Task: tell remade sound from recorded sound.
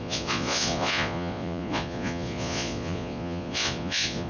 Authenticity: remade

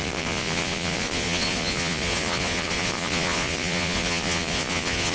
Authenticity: remade